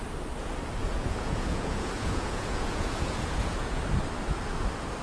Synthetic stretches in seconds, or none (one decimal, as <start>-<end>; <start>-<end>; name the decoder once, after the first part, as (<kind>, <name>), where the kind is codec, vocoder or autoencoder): 0.8-3.8 (vocoder, Vocos)